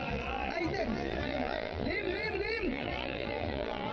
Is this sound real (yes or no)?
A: no